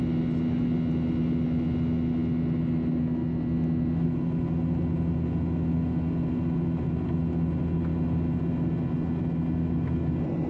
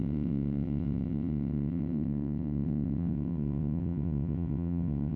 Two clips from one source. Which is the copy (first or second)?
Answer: second